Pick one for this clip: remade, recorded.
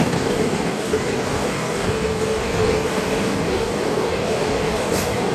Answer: remade